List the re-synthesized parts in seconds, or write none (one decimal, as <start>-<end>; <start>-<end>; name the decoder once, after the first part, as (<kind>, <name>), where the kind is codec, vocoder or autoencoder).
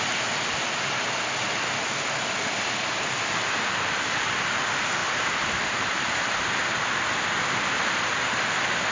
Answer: 5.0-6.2 (vocoder, BigVGAN v2)